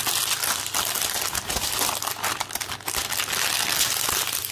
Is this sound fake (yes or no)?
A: no